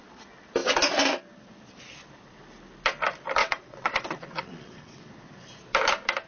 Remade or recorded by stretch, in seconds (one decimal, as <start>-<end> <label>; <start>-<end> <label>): 0.0-3.4 recorded; 3.4-5.1 remade; 5.1-6.3 recorded